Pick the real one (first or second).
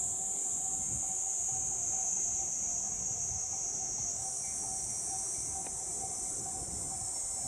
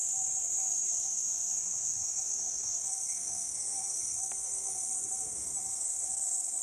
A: first